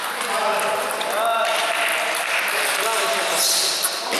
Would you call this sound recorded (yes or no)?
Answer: yes